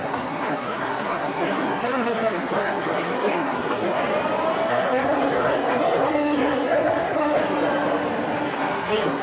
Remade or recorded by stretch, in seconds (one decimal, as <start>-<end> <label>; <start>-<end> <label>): 0.0-4.0 remade; 4.0-4.7 recorded; 4.7-7.4 remade; 7.4-8.5 recorded; 8.5-9.2 remade